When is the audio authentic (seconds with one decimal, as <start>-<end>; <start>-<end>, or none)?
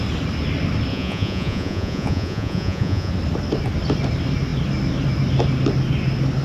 0.0-0.9; 3.1-6.4